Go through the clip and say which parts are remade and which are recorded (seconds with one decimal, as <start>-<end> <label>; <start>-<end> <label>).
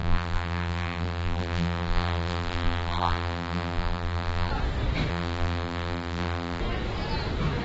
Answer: 0.0-4.5 remade; 4.5-5.1 recorded; 5.1-6.6 remade; 6.6-7.6 recorded